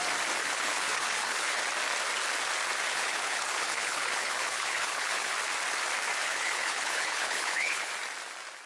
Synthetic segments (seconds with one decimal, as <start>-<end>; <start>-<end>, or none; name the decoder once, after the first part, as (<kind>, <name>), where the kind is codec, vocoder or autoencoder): 0.4-1.6 (codec, HILCodec); 2.9-5.3; 6.2-7.9